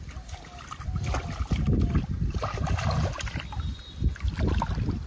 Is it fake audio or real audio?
real